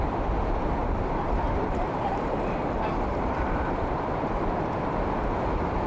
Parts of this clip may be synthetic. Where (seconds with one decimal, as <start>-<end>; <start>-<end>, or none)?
0.8-4.3